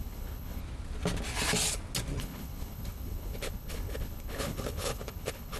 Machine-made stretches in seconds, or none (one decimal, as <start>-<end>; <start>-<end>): 0.0-0.6; 2.2-5.6